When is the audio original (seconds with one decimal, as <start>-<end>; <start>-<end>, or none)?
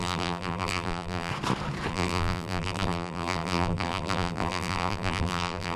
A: 1.3-1.9